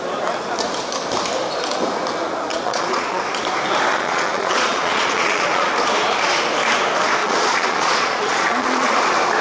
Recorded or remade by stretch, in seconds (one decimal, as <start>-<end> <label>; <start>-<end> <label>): 0.0-2.5 recorded; 2.5-3.2 remade; 3.2-3.9 recorded; 3.9-5.7 remade; 5.7-7.2 recorded; 7.2-8.9 remade; 8.9-9.4 recorded